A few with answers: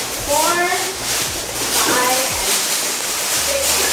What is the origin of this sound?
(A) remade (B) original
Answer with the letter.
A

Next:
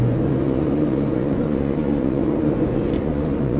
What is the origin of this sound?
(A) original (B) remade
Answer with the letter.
B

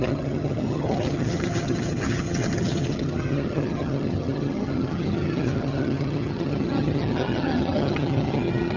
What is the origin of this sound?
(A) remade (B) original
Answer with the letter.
A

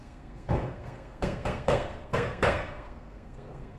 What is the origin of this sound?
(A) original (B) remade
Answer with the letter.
B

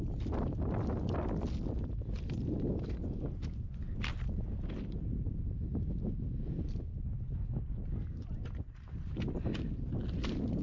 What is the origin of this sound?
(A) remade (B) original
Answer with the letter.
B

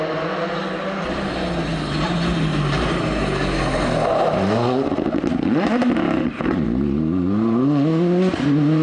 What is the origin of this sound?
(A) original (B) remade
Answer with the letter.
A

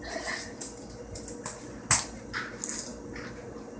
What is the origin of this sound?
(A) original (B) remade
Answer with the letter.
A